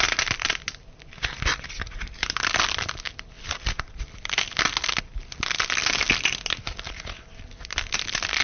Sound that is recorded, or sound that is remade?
recorded